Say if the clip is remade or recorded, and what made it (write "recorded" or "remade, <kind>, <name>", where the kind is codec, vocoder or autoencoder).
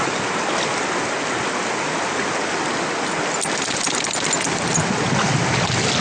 recorded